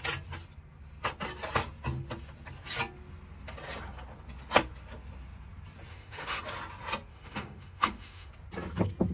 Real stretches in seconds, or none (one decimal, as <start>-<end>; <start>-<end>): 0.0-5.9; 6.4-7.1; 8.3-9.1